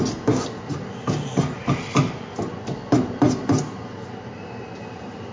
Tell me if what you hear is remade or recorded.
recorded